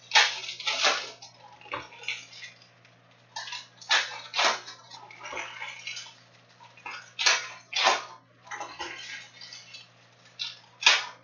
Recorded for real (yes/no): yes